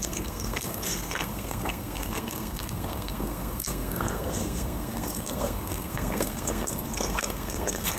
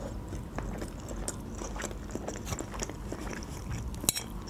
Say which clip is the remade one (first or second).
first